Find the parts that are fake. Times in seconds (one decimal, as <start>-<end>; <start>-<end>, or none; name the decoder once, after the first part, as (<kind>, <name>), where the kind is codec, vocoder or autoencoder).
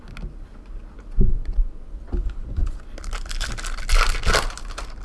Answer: none